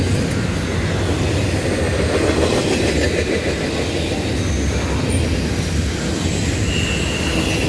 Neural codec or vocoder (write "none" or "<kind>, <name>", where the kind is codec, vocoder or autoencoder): none